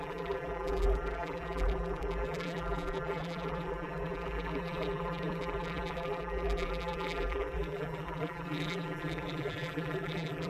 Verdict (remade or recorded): remade